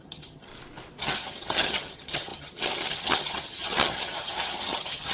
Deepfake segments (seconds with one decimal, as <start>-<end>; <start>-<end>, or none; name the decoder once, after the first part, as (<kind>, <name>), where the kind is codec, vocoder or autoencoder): 0.0-0.5 (vocoder, HiFi-GAN); 1.0-5.1